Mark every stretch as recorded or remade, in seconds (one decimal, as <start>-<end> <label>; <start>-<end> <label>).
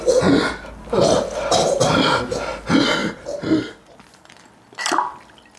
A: 0.0-5.6 recorded